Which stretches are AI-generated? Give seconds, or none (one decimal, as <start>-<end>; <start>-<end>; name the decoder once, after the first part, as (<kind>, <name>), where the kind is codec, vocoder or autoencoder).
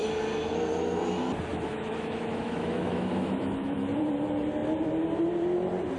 1.5-3.9 (autoencoder, DAC-VAE)